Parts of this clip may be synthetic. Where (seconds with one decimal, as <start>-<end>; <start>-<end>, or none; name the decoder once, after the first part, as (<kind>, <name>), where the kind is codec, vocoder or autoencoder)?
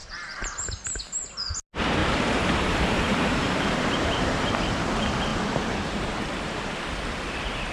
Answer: 0.0-0.5 (vocoder, BigVGAN v2); 2.0-4.5; 5.3-6.7